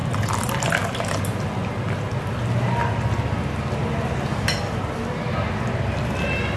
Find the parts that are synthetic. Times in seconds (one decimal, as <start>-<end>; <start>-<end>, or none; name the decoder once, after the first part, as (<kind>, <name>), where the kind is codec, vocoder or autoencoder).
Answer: none